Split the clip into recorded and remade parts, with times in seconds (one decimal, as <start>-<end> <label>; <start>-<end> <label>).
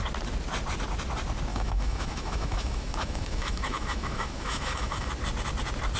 0.0-1.5 recorded; 1.5-5.1 remade; 5.1-6.0 recorded